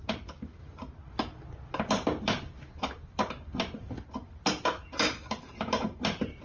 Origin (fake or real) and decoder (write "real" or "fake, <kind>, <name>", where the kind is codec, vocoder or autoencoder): real